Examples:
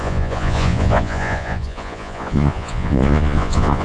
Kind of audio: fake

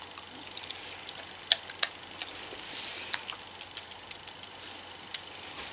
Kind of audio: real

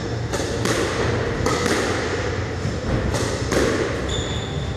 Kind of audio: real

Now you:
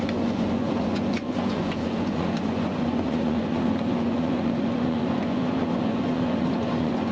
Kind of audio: fake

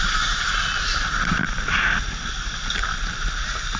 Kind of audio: real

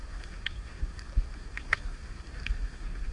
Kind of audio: fake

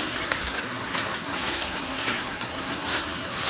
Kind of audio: fake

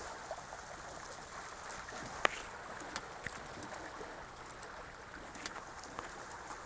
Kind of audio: real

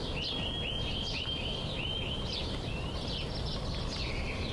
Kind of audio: real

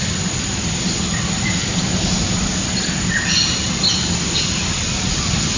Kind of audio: real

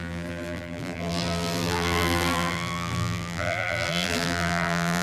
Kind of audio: fake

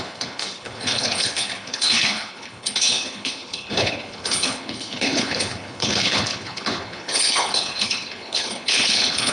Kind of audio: fake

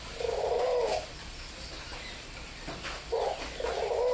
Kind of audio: real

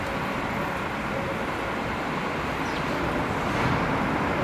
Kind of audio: real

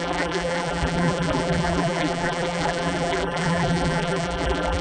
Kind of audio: fake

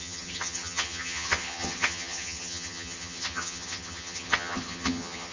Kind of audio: fake